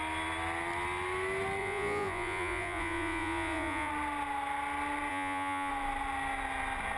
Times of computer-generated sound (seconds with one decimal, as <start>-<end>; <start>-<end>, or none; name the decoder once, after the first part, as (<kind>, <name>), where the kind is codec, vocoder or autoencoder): 1.6-3.9 (vocoder, Vocos); 5.1-5.7